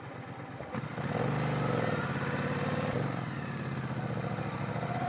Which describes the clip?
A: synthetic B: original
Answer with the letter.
B